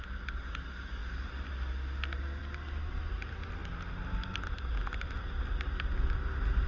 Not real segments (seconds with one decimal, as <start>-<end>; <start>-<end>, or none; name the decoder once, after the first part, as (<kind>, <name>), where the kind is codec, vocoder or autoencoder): none